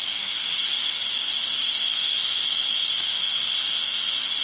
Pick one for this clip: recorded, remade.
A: remade